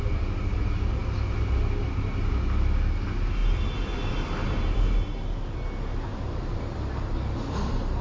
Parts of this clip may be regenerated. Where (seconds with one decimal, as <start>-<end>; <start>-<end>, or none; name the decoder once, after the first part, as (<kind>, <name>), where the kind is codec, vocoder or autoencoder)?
3.4-4.6 (vocoder, BigVGAN v2)

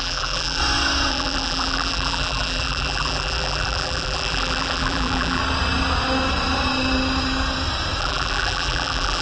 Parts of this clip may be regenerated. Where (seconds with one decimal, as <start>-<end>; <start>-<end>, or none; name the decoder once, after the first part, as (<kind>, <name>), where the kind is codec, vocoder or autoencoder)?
0.0-0.6 (vocoder, BigVGAN v2); 1.1-5.4; 8.0-9.2

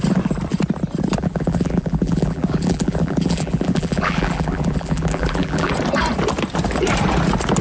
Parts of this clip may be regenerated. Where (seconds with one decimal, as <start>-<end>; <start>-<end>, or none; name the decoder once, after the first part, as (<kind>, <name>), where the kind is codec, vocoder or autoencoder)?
1.2-5.7 (vocoder, BigVGAN v2)

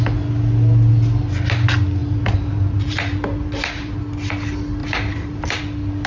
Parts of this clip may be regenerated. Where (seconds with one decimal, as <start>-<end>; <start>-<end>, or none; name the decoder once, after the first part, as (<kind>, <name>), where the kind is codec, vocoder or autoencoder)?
2.0-4.0 (vocoder, BigVGAN v2); 4.8-5.6

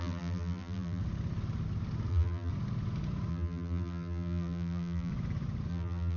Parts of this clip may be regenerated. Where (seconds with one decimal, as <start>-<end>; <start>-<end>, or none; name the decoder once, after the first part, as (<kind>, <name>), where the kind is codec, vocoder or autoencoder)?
0.0-1.0 (vocoder, BigVGAN v2); 2.1-2.5; 3.3-5.1; 5.7-6.2

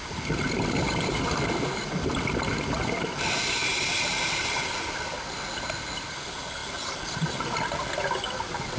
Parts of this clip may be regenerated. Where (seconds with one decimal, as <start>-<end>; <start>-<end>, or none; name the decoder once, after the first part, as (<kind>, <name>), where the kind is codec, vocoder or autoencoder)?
none

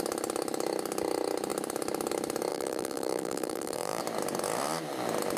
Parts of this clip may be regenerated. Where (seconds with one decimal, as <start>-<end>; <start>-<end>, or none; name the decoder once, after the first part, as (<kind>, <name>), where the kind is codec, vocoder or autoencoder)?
2.5-4.0 (vocoder, BigVGAN v2)

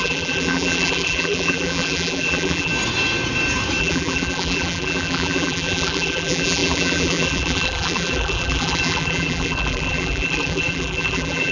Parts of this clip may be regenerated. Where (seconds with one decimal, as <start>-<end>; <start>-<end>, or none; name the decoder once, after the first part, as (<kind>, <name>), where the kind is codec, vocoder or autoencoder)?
0.0-2.7 (vocoder, BigVGAN v2); 3.8-11.5